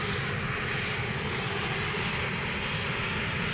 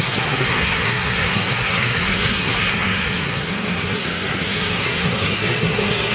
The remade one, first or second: second